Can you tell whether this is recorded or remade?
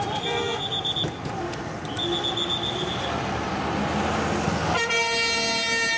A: recorded